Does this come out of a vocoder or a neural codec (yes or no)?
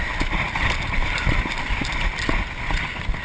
no